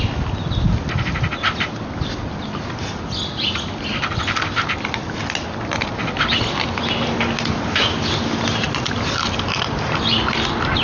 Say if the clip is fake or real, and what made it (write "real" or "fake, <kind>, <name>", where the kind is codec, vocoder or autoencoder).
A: real